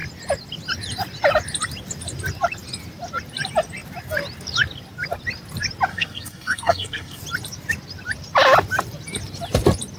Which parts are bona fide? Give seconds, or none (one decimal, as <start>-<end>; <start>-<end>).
0.0-5.9; 7.2-10.0